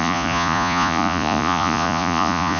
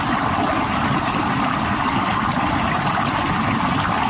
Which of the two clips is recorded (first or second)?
second